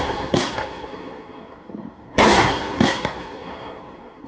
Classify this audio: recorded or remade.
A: remade